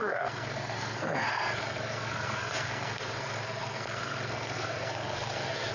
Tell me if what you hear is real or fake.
fake